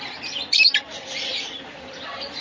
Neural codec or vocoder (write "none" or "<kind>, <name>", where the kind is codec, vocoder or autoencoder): none